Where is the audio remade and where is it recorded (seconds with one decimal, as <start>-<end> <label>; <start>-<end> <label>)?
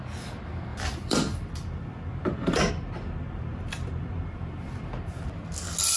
0.0-0.7 recorded; 0.7-2.7 remade; 2.7-3.5 recorded; 3.5-4.7 remade; 4.7-6.0 recorded